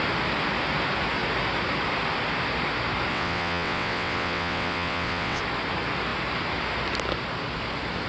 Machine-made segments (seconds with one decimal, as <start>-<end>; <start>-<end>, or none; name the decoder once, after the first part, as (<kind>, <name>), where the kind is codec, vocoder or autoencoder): 3.1-5.4 (vocoder, WaveNeXt)